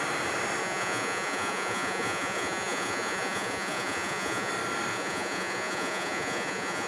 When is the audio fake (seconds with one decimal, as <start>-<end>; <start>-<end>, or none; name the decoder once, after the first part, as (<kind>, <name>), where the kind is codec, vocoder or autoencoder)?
0.6-4.5 (vocoder, Vocos); 4.9-6.9